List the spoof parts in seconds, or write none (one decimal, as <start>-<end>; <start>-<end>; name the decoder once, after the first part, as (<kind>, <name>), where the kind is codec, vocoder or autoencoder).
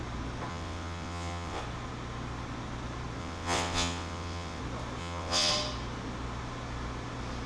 0.5-1.6 (vocoder, WaveNeXt); 3.2-4.6; 5.0-5.5